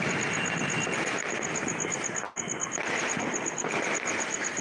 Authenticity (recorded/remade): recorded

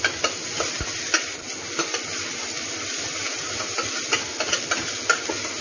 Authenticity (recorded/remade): recorded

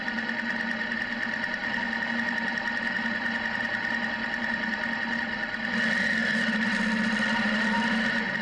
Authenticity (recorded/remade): recorded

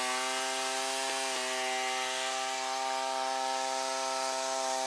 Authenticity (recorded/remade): recorded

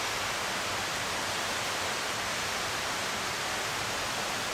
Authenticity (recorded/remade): recorded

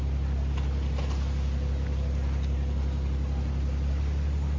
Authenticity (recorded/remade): recorded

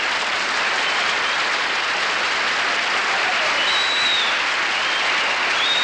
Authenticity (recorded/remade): recorded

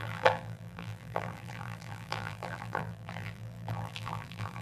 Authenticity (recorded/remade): remade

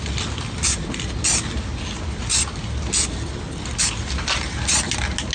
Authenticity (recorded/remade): recorded